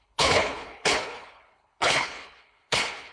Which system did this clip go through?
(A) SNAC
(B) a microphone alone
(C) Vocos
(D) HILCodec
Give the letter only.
D